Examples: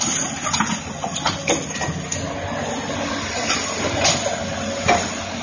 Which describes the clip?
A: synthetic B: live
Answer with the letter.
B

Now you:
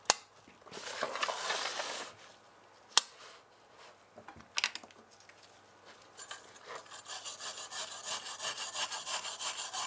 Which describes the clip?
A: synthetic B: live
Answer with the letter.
B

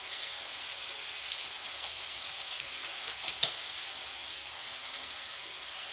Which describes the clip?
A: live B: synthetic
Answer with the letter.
B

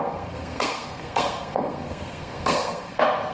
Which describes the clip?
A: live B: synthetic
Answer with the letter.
B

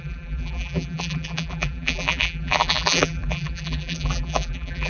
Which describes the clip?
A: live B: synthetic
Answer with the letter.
B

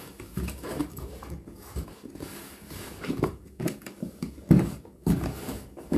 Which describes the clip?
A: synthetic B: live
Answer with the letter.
A